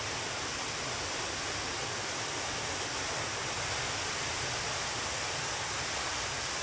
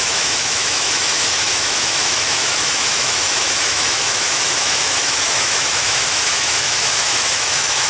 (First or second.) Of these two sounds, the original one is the first